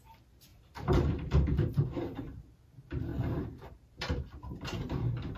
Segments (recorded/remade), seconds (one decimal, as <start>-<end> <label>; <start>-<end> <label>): 0.0-0.5 recorded; 0.5-2.6 remade; 2.6-3.1 recorded; 3.1-5.4 remade